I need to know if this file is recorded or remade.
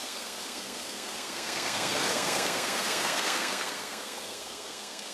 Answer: remade